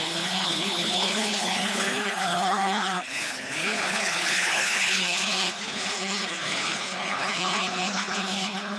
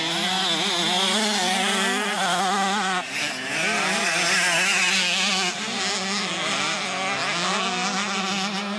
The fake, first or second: first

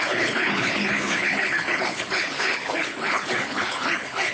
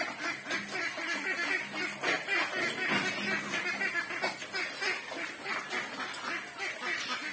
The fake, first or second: first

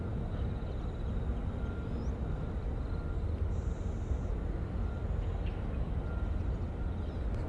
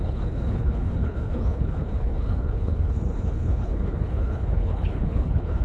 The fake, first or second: second